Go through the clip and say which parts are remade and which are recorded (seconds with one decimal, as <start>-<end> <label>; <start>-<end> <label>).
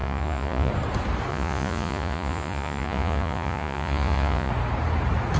0.0-0.7 remade; 0.7-1.3 recorded; 1.3-4.5 remade; 4.5-5.4 recorded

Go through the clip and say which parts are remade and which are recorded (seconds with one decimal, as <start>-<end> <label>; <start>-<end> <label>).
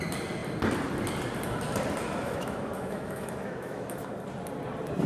0.0-2.2 recorded; 2.2-4.1 remade; 4.1-5.1 recorded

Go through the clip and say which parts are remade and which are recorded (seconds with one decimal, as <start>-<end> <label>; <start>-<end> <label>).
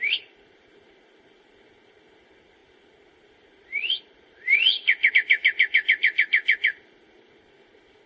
0.0-8.1 recorded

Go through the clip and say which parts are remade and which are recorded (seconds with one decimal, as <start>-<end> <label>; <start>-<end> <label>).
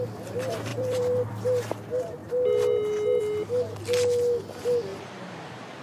0.0-0.7 recorded; 0.7-1.3 remade; 1.3-4.9 recorded; 4.9-5.8 remade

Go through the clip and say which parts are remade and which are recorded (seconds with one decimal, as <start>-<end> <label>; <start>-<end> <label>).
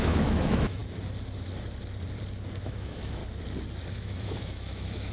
0.0-0.8 remade; 0.8-2.6 recorded; 2.6-3.2 remade; 3.2-3.9 recorded; 3.9-5.1 remade